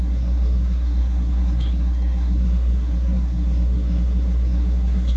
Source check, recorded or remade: remade